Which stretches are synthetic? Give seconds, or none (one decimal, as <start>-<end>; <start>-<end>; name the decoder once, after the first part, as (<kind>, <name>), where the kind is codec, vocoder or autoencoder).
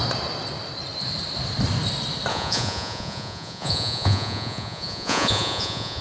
2.3-6.0 (vocoder, Vocos)